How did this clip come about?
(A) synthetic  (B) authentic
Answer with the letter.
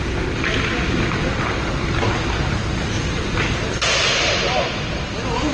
B